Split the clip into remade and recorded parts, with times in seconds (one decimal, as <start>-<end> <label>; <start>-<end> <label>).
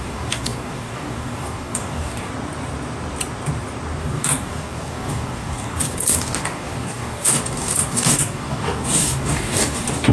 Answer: 0.0-2.3 remade; 2.3-4.0 recorded; 4.0-10.1 remade